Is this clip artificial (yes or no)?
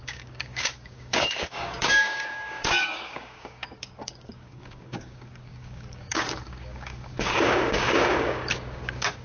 yes